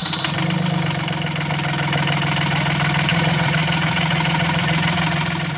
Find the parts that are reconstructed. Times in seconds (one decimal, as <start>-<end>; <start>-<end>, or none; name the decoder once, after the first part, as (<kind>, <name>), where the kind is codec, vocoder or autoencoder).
3.1-5.6 (vocoder, Vocos)